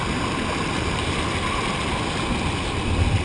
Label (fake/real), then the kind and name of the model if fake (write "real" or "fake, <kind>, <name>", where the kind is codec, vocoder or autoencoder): real